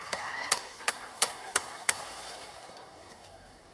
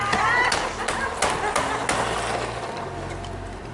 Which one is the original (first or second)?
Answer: second